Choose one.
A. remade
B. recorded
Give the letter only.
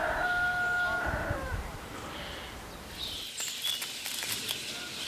B